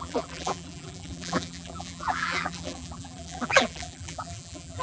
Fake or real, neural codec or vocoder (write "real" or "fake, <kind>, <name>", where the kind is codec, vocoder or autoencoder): fake, vocoder, BigVGAN v2